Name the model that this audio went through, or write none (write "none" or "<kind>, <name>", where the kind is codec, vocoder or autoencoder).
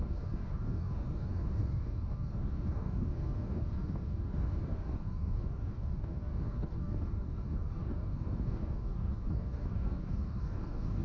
codec, DAC